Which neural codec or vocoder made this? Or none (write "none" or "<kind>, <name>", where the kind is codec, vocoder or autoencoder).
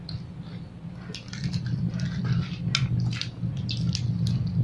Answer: none